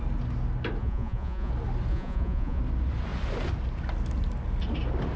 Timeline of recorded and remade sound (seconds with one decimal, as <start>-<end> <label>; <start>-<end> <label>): 0.0-0.8 recorded; 0.8-1.5 remade; 1.5-1.9 recorded; 1.9-2.6 remade; 2.6-5.2 recorded